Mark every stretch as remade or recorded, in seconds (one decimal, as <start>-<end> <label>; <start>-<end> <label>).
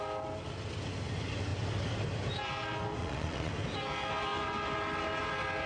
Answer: 0.0-3.0 recorded; 3.0-3.5 remade; 3.5-5.7 recorded